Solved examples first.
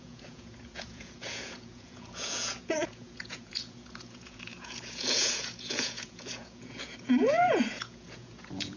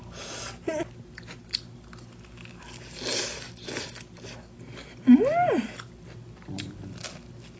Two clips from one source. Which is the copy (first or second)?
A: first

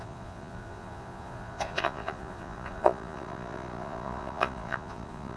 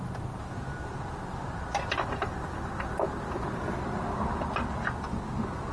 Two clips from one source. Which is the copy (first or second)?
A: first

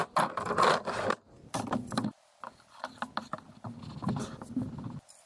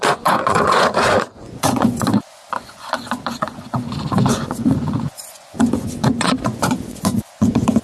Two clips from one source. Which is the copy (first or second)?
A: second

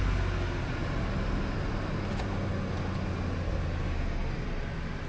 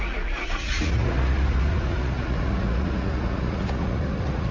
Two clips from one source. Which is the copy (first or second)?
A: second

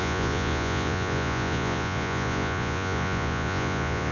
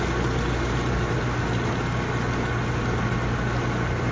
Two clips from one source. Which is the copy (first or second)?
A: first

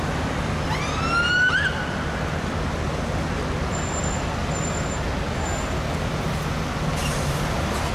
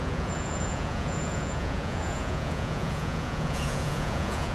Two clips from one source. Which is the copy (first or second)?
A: second